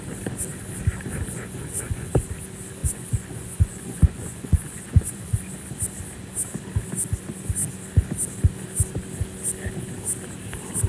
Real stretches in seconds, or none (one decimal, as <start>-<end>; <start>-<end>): 0.0-1.3; 2.1-2.8; 5.5-10.9